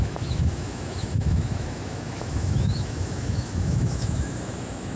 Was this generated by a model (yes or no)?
yes